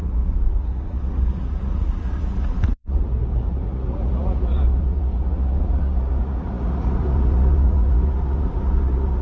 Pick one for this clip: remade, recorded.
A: remade